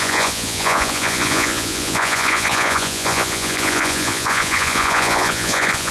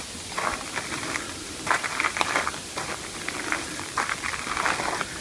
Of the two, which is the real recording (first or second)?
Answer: second